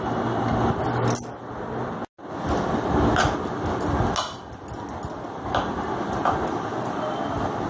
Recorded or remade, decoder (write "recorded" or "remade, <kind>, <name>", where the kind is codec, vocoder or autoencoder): recorded